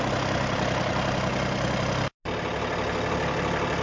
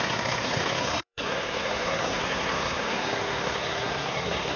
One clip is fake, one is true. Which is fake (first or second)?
second